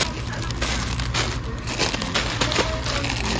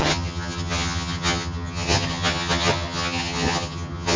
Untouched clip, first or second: first